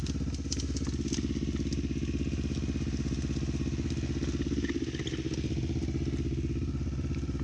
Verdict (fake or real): real